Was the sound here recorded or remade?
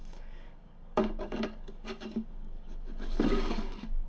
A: remade